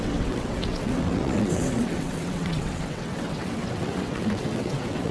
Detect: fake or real fake